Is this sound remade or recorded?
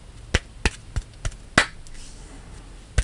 recorded